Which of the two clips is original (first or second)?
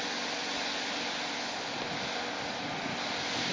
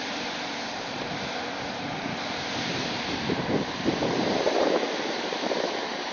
first